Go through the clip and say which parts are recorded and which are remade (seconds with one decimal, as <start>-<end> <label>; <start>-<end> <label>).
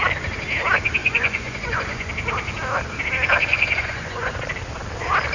0.0-1.0 recorded; 1.0-2.1 remade; 2.1-3.5 recorded; 3.5-4.3 remade; 4.3-5.3 recorded